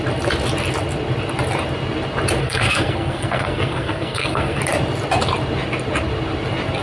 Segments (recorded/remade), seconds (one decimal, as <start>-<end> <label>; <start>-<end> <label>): 0.0-2.4 recorded; 2.4-4.6 remade; 4.6-6.8 recorded